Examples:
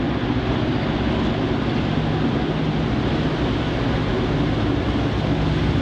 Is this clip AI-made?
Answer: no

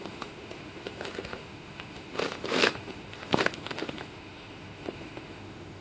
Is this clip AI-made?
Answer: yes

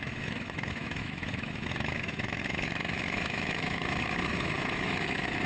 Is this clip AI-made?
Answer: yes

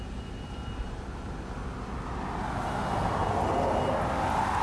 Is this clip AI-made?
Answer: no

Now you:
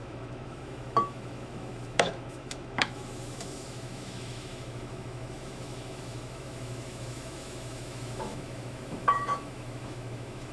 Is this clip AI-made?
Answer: yes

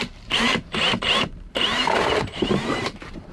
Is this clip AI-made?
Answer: yes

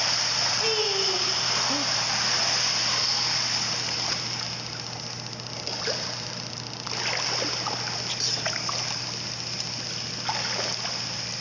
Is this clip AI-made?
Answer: no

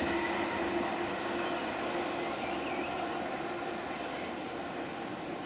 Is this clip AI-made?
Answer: no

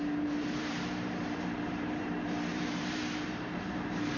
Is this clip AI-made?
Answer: yes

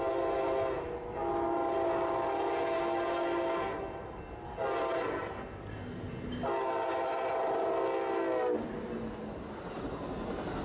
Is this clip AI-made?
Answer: no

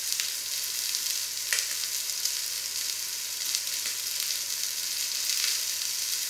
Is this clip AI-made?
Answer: no